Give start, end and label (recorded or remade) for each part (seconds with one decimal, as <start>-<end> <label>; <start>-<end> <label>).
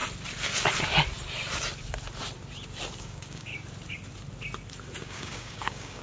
0.0-3.0 recorded; 3.0-3.5 remade; 3.5-5.0 recorded; 5.0-6.0 remade